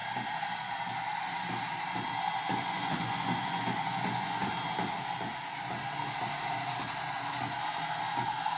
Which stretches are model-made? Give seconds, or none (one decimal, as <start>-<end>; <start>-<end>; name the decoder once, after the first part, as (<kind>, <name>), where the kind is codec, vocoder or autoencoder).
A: 2.5-4.5 (vocoder, Vocos)